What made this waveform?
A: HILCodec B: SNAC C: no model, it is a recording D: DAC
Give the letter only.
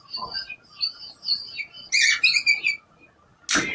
C